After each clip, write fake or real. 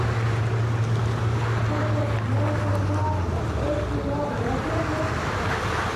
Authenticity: real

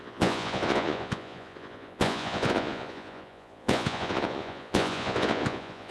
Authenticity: fake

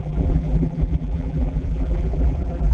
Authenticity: fake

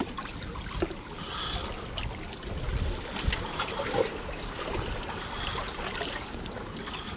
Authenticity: real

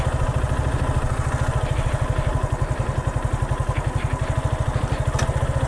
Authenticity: real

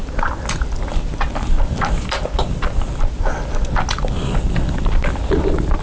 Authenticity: real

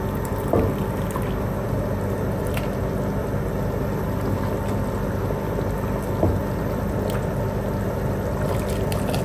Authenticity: real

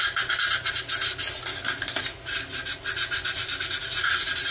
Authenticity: real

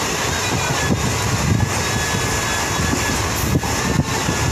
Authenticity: real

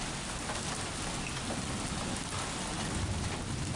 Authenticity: real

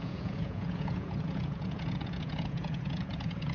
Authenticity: fake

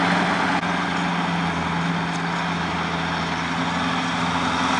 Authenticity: real